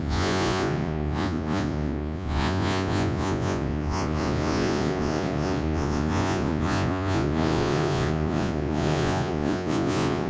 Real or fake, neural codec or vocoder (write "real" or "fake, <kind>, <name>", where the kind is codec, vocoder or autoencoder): fake, vocoder, Vocos